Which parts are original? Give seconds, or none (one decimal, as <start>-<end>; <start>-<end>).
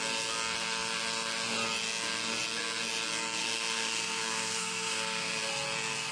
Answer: 0.0-3.4; 5.4-6.1